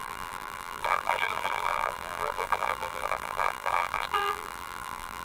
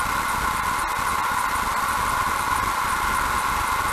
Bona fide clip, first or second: second